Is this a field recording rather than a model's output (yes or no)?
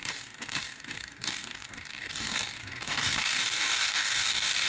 no